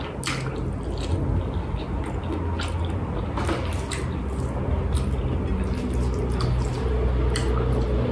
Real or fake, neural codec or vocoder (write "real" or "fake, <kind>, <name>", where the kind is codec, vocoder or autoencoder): real